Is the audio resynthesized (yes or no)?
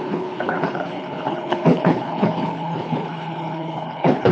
yes